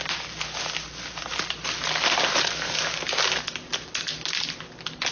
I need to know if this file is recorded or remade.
recorded